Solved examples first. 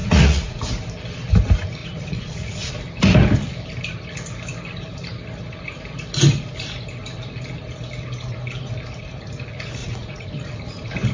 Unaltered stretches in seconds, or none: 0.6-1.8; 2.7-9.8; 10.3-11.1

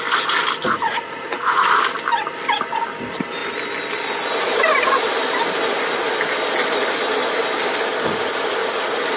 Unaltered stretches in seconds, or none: 0.0-0.6; 1.7-8.6

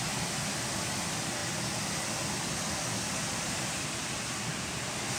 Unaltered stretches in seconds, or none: 0.0-5.2

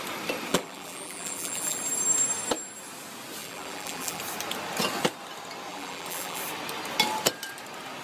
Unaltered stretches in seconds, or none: 0.0-0.5; 1.8-3.4; 4.2-5.7; 6.4-8.0

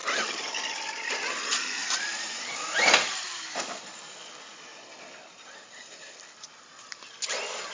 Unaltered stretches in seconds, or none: 1.1-1.8; 3.8-4.7; 6.6-7.7